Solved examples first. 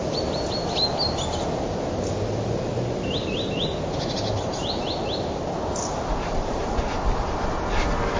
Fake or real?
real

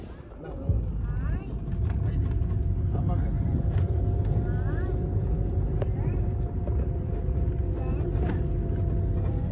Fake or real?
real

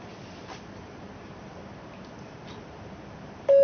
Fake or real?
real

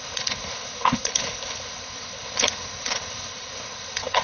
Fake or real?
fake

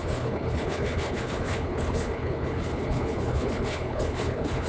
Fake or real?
fake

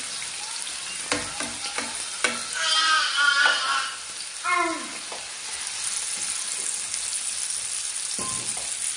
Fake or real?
real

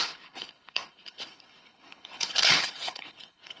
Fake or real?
fake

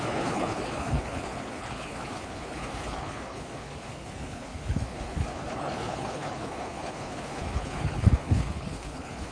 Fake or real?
fake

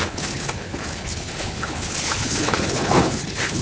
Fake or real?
fake